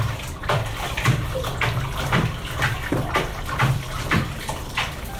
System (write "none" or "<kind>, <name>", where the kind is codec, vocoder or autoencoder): vocoder, BigVGAN v2